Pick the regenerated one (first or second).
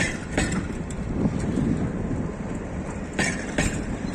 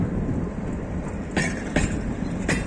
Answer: first